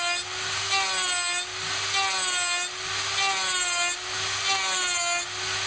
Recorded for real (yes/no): yes